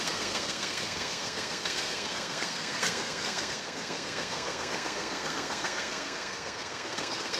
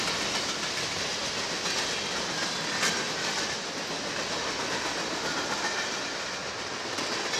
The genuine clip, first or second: second